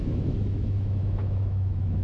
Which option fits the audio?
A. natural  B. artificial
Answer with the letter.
B